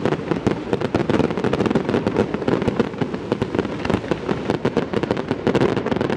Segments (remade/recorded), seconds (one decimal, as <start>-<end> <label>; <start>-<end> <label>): 0.0-1.0 remade; 1.0-4.7 recorded; 4.7-6.2 remade